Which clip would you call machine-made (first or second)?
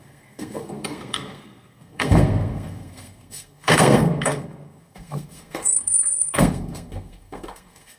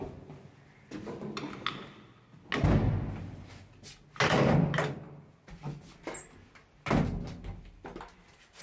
first